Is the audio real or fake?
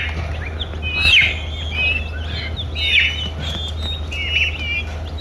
real